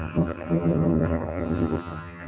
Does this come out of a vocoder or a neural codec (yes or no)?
yes